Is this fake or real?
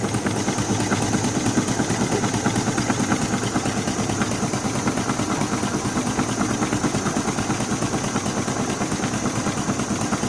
real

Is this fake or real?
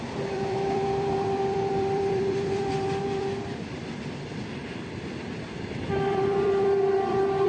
fake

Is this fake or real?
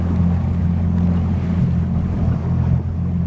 real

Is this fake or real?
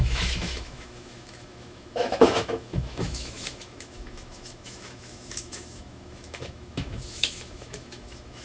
fake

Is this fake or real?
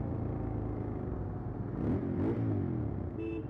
real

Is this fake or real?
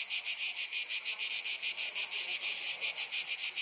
real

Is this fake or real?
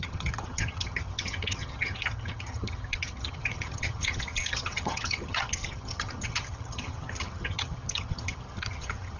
fake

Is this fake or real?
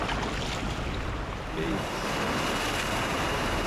real